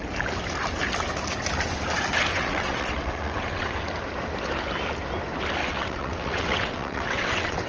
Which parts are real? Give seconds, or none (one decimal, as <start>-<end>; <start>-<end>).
0.0-2.3; 3.8-5.6